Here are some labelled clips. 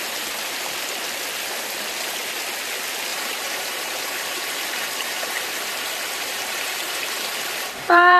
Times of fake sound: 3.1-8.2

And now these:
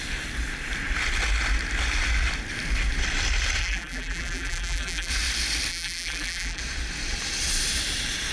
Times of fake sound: 3.6-5.1; 5.7-6.6

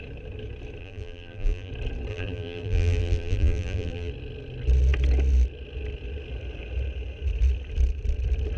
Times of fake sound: 0.8-1.7; 2.1-4.1

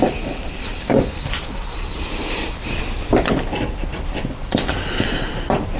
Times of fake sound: 0.0-2.8; 4.4-5.3

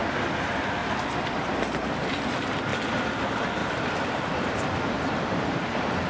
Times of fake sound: 0.8-1.5; 3.6-6.1